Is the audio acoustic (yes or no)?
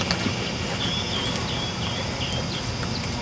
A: yes